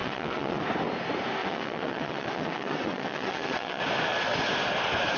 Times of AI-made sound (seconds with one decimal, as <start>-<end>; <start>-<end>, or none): 0.0-0.6; 1.4-3.8